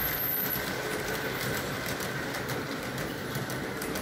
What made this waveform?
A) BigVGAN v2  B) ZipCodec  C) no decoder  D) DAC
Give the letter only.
C